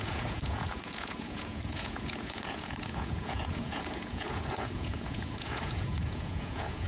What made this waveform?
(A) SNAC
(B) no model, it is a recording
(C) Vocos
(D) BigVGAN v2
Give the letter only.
C